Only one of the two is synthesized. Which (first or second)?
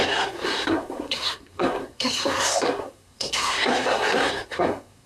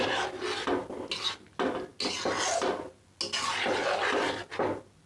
first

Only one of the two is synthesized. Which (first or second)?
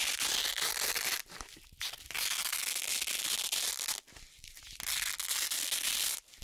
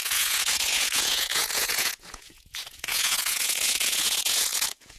second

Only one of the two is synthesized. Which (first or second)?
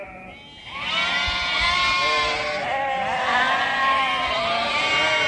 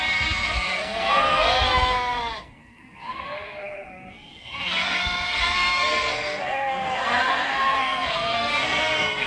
second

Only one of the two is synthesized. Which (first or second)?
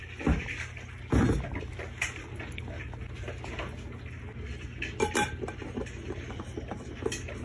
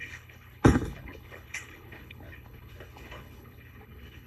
second